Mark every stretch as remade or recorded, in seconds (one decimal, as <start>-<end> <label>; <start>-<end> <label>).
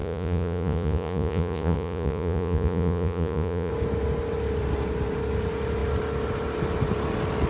0.0-3.7 remade; 3.7-7.5 recorded